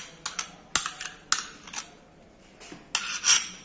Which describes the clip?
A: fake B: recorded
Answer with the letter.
B